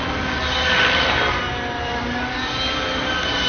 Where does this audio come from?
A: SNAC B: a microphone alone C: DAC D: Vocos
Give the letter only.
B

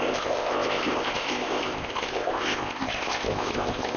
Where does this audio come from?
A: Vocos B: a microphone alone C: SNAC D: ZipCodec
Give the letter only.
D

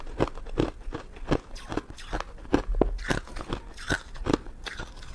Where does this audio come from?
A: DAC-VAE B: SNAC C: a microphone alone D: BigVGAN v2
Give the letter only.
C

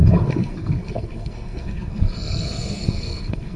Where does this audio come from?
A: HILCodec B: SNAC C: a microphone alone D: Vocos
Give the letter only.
B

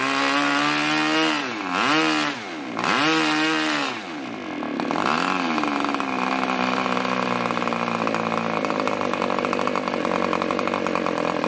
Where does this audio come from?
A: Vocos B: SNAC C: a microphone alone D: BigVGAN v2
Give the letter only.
C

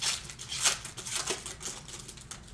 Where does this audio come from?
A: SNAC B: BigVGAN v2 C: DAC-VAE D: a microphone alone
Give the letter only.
D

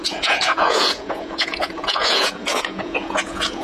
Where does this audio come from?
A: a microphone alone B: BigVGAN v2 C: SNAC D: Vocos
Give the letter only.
D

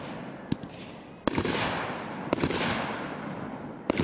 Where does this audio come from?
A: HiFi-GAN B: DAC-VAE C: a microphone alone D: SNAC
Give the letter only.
C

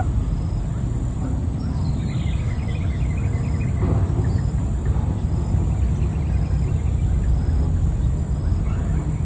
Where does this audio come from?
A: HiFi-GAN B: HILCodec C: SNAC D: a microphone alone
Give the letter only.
D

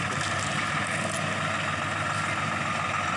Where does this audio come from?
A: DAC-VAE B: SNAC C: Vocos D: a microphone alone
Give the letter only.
D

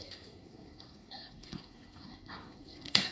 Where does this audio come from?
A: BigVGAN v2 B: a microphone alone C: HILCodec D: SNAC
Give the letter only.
D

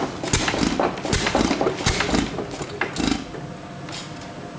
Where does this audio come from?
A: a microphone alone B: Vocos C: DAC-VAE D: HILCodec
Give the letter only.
A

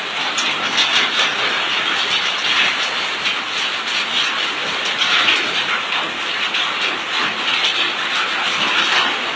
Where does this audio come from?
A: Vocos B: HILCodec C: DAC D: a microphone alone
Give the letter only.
D